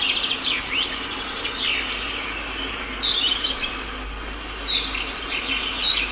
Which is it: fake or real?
real